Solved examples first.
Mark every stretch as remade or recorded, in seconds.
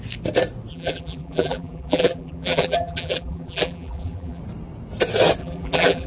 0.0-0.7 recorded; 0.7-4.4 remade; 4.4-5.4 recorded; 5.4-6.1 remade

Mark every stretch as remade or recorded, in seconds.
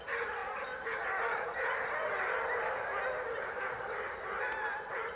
0.0-5.2 recorded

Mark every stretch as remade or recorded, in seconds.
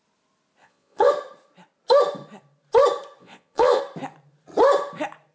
0.0-0.6 recorded; 0.6-1.1 remade; 1.1-3.2 recorded; 3.2-3.8 remade; 3.8-5.3 recorded